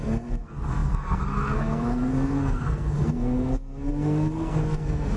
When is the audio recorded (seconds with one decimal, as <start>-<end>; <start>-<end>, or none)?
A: none